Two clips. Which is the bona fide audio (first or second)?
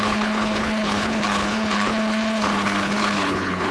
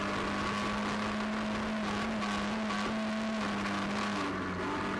second